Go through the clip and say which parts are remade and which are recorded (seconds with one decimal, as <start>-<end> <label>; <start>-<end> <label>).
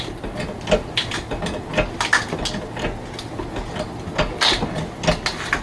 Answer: 0.0-5.6 recorded